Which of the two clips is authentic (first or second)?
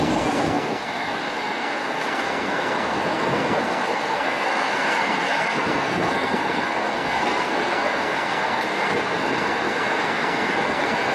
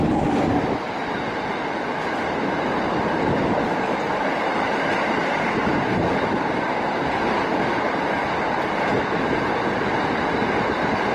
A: second